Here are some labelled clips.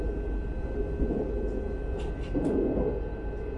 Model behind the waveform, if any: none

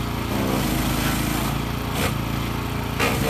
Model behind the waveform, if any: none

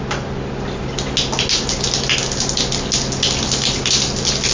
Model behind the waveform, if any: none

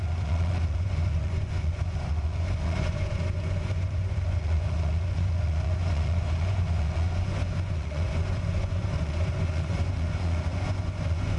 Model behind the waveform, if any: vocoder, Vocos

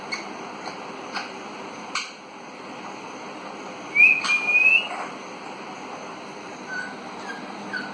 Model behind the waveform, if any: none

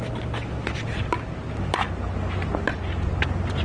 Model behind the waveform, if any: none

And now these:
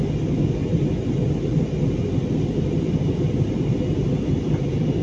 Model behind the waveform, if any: none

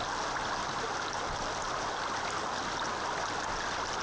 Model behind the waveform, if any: none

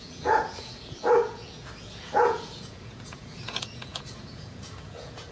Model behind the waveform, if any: vocoder, Vocos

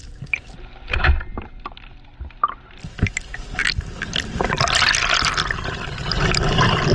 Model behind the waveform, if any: none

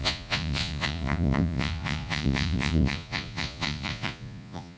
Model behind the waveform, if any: vocoder, Vocos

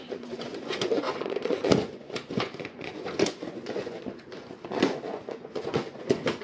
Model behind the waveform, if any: vocoder, Vocos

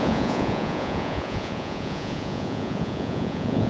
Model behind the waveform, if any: vocoder, Vocos